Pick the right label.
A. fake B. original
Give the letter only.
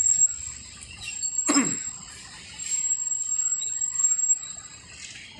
B